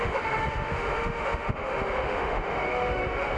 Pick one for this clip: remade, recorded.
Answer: remade